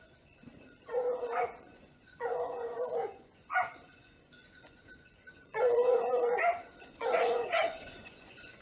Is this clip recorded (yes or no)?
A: no